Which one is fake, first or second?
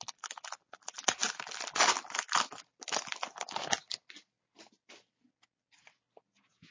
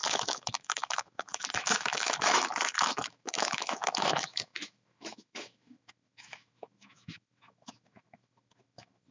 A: second